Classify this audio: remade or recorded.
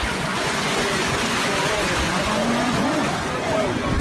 remade